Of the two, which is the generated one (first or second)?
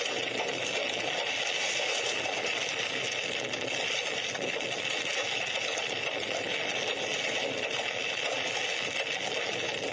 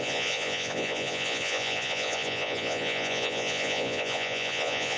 second